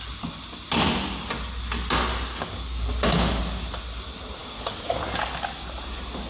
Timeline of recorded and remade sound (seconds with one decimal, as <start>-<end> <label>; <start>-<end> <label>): 0.0-2.1 recorded; 2.1-3.4 remade; 3.4-4.4 recorded; 4.4-5.0 remade; 5.0-6.3 recorded